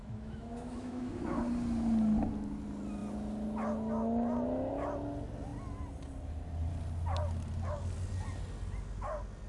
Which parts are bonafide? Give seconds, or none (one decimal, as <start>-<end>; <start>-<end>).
1.2-9.5